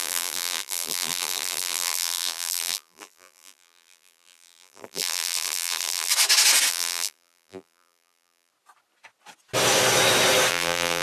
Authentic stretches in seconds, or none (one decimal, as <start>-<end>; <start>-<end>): 6.1-6.7; 8.5-10.5